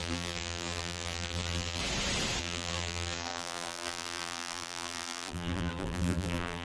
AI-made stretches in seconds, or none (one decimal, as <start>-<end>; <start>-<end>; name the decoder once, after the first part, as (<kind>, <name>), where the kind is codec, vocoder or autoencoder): 0.0-1.8 (vocoder, BigVGAN v2); 2.4-6.6

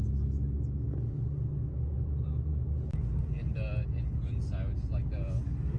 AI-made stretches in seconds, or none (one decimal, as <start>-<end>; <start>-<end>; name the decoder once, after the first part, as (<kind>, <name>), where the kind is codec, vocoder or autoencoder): none

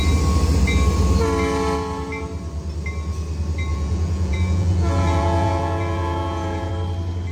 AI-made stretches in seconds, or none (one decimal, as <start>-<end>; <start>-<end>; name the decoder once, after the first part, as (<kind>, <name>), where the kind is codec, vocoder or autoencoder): 3.7-6.7 (vocoder, Vocos)

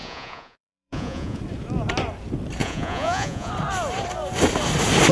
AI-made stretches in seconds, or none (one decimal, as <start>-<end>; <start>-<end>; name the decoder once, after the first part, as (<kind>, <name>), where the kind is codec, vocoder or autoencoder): 0.0-1.4 (vocoder, Vocos); 2.6-3.5

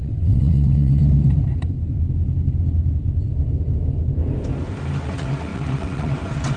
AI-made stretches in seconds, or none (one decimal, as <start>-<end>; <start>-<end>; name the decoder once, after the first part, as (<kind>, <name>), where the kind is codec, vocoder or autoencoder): 0.0-1.0 (vocoder, WaveNeXt); 5.0-6.6

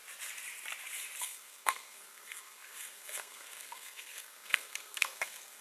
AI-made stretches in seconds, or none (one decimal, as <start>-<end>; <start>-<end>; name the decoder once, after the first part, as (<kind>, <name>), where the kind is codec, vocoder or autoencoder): 1.2-5.6 (codec, SNAC)